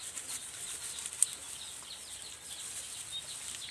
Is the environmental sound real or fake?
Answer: real